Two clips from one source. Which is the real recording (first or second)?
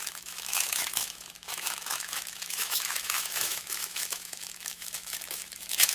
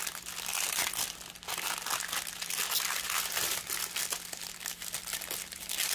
second